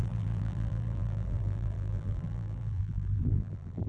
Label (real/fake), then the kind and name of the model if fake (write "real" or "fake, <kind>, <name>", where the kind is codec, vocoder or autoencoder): fake, vocoder, BigVGAN v2